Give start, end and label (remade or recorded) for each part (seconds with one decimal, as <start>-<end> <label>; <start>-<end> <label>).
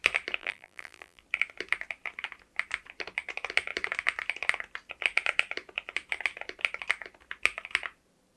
0.0-0.4 recorded; 0.4-1.2 remade; 1.2-8.4 recorded